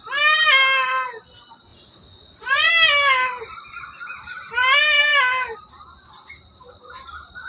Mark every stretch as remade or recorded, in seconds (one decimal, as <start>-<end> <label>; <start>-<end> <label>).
0.0-1.7 recorded; 1.7-2.7 remade; 2.7-7.5 recorded